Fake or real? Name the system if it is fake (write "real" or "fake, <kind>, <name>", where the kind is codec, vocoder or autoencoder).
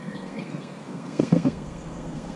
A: fake, codec, SNAC